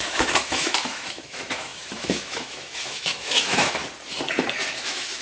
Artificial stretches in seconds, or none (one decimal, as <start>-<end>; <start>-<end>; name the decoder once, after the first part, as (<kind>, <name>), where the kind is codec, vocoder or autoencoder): 0.0-3.8 (autoencoder, DAC-VAE); 4.7-5.2